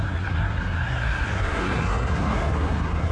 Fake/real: fake